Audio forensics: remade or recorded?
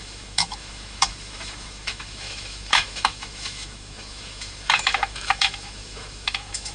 remade